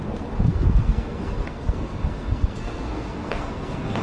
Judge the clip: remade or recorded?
remade